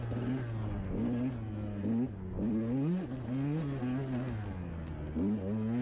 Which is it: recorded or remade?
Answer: recorded